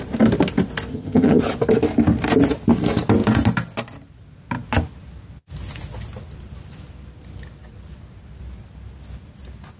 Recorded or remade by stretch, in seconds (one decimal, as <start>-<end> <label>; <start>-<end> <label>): 0.0-0.9 recorded; 0.9-1.4 remade; 1.4-9.8 recorded